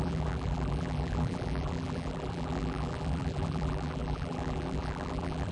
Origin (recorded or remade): remade